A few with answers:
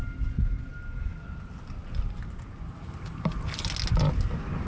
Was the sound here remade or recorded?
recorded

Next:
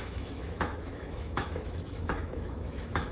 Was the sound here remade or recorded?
remade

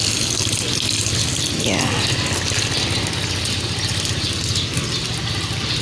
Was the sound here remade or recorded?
recorded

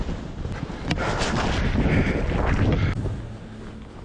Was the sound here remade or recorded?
recorded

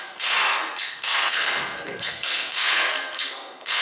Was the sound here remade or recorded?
remade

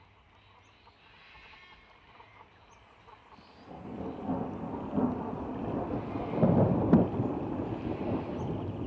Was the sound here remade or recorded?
recorded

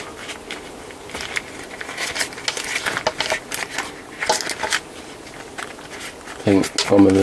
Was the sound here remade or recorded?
recorded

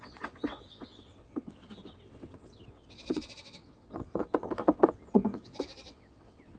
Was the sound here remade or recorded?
remade